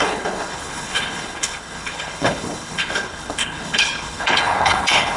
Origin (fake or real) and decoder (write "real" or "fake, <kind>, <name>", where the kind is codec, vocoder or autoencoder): fake, codec, HILCodec